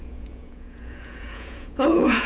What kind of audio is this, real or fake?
fake